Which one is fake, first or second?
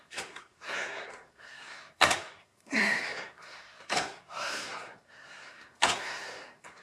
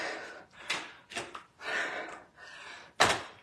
first